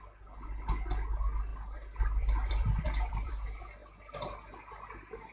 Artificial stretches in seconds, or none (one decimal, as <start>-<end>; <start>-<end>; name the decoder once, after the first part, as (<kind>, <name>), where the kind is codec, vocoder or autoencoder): 1.5-3.3 (vocoder, BigVGAN v2)